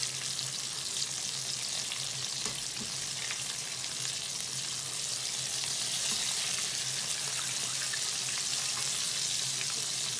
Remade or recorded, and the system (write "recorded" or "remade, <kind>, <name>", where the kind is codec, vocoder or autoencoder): recorded